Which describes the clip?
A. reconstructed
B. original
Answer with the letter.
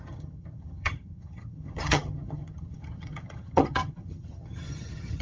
A